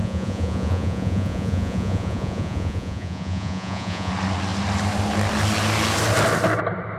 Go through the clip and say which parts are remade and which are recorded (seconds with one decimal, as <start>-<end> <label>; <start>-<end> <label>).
0.0-4.1 remade; 4.1-7.0 recorded

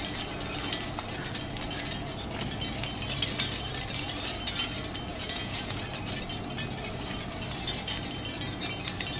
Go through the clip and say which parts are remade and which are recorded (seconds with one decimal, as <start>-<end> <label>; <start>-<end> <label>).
0.0-5.1 recorded; 5.1-5.8 remade; 5.8-9.2 recorded

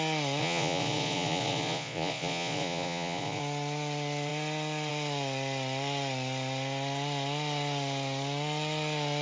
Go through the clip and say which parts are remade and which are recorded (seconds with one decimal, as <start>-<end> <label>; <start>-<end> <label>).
0.0-0.4 recorded; 0.4-3.4 remade; 3.4-9.2 recorded

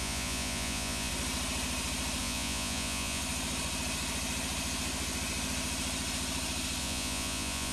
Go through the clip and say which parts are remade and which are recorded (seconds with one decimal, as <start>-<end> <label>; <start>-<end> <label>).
0.0-1.1 remade; 1.1-2.2 recorded; 2.2-3.2 remade; 3.2-6.8 recorded; 6.8-7.7 remade

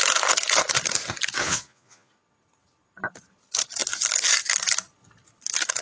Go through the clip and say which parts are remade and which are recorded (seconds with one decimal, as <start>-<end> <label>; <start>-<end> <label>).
0.0-1.4 recorded; 1.4-2.1 remade; 2.1-5.8 recorded

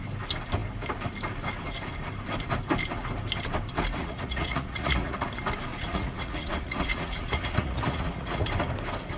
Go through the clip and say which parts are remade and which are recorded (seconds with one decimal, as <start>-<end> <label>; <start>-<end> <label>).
0.0-4.0 recorded; 4.0-5.3 remade; 5.3-5.7 recorded; 5.7-8.5 remade; 8.5-9.2 recorded

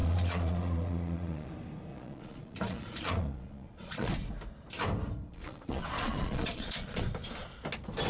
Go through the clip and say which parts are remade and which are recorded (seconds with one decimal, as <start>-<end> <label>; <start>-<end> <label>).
0.0-1.5 remade; 1.5-1.9 recorded; 1.9-4.1 remade; 4.1-5.3 recorded; 5.3-7.0 remade; 7.0-8.1 recorded